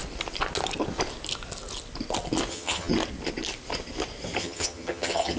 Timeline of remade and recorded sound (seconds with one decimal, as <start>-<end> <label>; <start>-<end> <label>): 0.0-2.5 recorded; 2.5-2.9 remade; 2.9-4.4 recorded; 4.4-5.4 remade